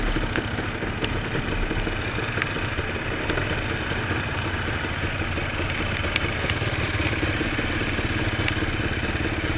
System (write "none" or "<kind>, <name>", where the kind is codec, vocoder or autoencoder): none